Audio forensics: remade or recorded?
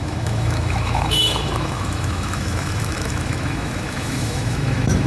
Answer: remade